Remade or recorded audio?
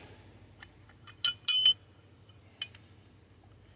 recorded